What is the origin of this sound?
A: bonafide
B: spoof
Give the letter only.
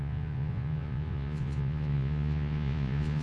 B